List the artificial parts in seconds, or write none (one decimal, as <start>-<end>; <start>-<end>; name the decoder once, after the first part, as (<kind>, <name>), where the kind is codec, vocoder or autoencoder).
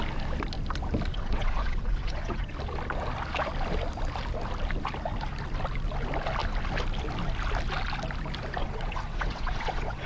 1.1-2.5 (vocoder, WaveNeXt); 8.6-10.1